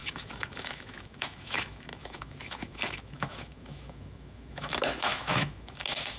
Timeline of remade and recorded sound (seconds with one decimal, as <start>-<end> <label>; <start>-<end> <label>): 0.0-6.2 remade